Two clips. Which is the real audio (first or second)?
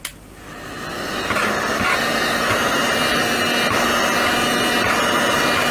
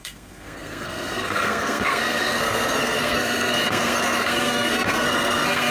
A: first